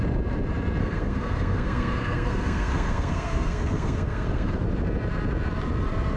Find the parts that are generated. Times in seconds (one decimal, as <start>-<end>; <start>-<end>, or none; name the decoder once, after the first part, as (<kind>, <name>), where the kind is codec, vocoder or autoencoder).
0.8-4.5 (codec, SNAC)